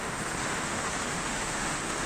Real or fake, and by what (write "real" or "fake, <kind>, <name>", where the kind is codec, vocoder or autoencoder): fake, autoencoder, DAC-VAE